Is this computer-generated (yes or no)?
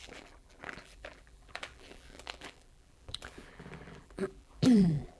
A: yes